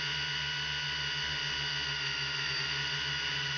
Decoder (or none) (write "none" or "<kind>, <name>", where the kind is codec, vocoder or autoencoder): none